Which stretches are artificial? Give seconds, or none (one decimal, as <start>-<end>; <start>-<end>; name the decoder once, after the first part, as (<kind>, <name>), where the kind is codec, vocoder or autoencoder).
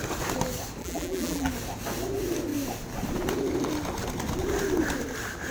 0.8-1.5 (vocoder, BigVGAN v2)